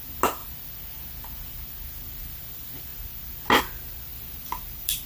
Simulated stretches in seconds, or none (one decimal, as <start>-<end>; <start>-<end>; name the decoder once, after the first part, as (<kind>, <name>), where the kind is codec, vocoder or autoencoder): 4.1-5.1 (vocoder, BigVGAN v2)